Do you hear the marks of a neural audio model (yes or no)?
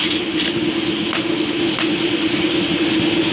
no